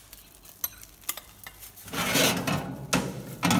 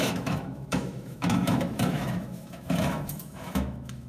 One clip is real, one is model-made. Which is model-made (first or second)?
second